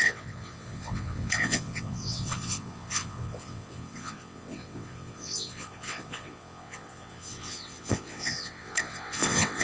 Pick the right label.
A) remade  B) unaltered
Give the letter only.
A